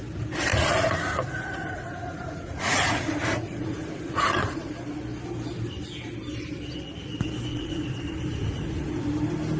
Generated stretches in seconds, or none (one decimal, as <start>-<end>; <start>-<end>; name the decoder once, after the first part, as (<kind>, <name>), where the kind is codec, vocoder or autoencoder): 0.5-4.7 (vocoder, Vocos); 7.5-9.0